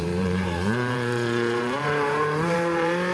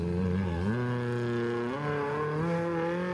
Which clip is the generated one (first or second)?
first